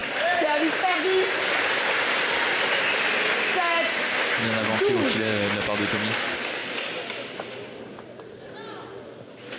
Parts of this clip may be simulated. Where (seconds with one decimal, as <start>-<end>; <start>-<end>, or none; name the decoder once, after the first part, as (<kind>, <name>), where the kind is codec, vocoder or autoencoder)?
0.0-2.2 (vocoder, BigVGAN v2); 3.5-5.9